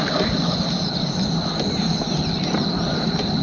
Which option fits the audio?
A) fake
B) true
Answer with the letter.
B